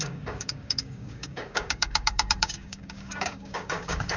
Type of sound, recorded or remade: remade